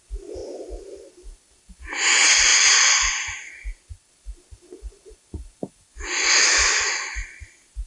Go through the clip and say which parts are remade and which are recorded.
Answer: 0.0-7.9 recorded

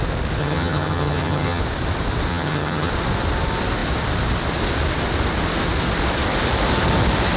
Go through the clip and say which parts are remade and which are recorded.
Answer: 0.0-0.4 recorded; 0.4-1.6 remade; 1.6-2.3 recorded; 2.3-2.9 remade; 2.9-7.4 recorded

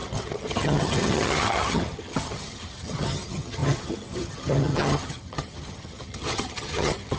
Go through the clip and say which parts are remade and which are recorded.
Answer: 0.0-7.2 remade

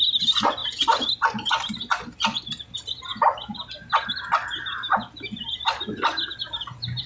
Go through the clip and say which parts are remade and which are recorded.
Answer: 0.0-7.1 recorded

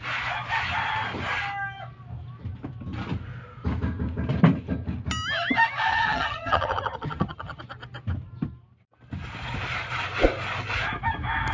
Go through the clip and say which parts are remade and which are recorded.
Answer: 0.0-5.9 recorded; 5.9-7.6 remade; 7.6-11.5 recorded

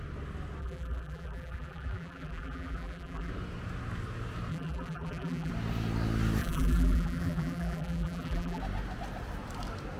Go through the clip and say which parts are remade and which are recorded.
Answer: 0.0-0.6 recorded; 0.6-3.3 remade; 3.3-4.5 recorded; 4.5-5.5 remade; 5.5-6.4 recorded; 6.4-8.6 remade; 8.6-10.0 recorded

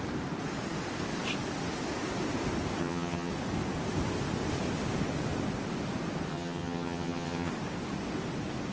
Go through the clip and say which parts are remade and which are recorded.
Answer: 0.0-2.8 recorded; 2.8-3.3 remade; 3.3-6.3 recorded; 6.3-7.5 remade; 7.5-8.7 recorded

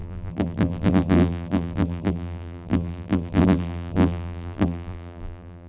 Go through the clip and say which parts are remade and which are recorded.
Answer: 0.0-5.7 remade